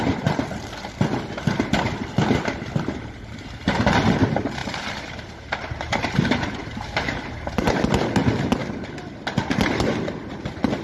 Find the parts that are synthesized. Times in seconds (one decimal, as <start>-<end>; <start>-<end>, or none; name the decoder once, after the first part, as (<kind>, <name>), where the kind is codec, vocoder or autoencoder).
4.6-7.8 (vocoder, BigVGAN v2)